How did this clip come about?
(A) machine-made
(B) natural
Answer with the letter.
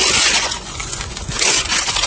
A